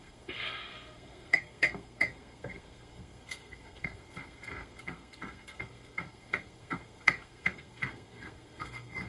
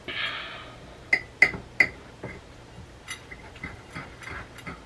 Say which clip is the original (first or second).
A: second